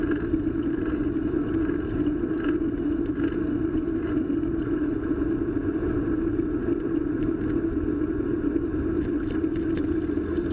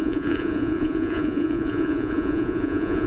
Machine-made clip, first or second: second